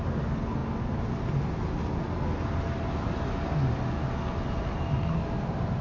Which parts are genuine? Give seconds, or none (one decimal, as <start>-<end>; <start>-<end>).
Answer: 0.0-5.8